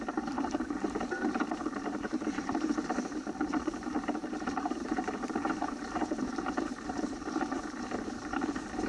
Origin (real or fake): fake